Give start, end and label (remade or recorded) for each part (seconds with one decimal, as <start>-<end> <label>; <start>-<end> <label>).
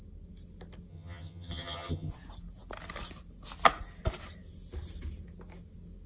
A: 0.0-0.9 recorded; 0.9-2.1 remade; 2.1-6.1 recorded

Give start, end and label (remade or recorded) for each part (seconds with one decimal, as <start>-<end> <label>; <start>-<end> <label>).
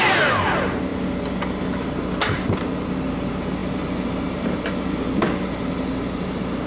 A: 0.0-6.7 recorded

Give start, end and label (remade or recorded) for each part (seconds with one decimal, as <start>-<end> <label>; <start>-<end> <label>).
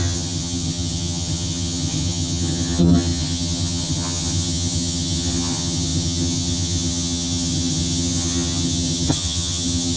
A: 0.0-10.0 remade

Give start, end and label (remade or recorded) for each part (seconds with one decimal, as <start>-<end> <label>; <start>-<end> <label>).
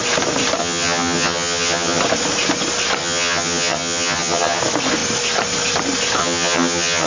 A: 0.0-0.6 recorded; 0.6-2.0 remade; 2.0-3.0 recorded; 3.0-4.6 remade; 4.6-6.2 recorded; 6.2-7.1 remade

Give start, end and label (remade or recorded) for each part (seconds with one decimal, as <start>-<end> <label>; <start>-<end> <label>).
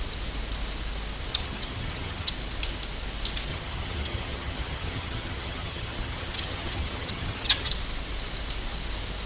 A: 0.0-1.3 recorded; 1.3-2.3 remade; 2.3-3.5 recorded; 3.5-7.7 remade; 7.7-9.3 recorded